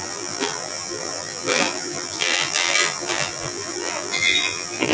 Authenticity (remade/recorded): remade